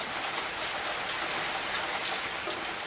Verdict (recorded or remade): recorded